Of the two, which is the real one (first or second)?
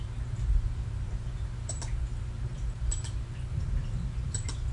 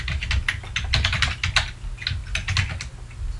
second